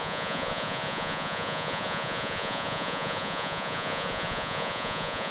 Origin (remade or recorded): remade